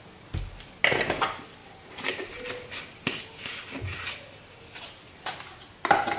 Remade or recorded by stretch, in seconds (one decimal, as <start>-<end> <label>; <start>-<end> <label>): 0.0-6.2 recorded